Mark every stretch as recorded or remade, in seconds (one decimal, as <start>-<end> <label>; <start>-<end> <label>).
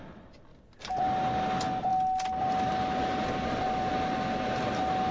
0.0-0.5 recorded; 0.5-1.0 remade; 1.0-5.1 recorded